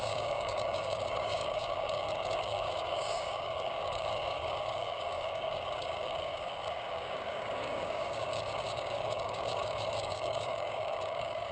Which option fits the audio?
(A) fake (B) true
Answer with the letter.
A